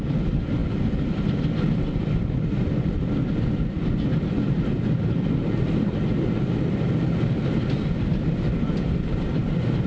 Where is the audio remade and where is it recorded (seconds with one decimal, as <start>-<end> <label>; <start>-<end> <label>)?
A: 0.0-9.9 recorded